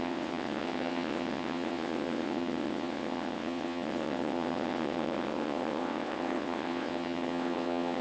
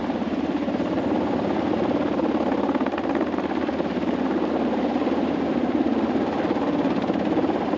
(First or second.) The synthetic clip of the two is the first